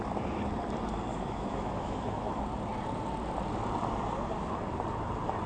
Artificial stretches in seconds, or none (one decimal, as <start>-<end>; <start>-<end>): 1.1-2.3